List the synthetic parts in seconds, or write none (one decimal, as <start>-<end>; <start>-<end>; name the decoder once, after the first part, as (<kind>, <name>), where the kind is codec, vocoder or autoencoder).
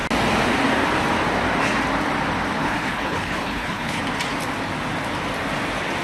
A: 2.6-4.0 (codec, HILCodec)